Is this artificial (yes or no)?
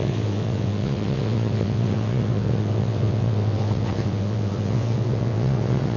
yes